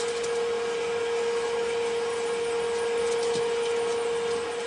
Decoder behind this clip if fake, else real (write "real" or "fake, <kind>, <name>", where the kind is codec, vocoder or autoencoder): real